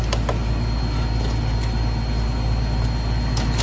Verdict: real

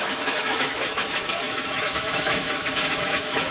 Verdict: fake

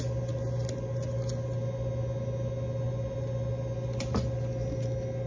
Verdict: real